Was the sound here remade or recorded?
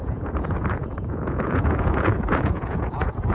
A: remade